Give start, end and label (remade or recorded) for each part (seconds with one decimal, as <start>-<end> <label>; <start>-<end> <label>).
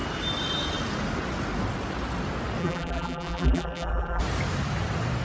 0.0-2.6 recorded; 2.6-4.2 remade; 4.2-5.2 recorded